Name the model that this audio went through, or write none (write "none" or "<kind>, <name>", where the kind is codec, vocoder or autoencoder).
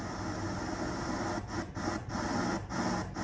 none